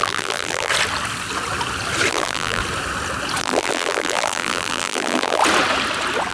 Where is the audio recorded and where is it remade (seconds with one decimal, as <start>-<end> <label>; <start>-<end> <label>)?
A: 0.0-0.7 remade; 0.7-2.1 recorded; 2.1-2.6 remade; 2.6-3.4 recorded; 3.4-5.4 remade; 5.4-6.3 recorded